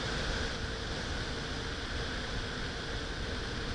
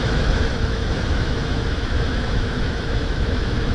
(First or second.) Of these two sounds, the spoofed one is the second